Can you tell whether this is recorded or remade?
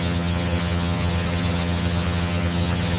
remade